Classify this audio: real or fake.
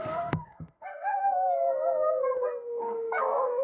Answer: fake